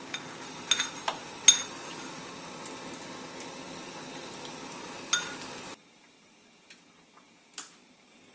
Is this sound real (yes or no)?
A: yes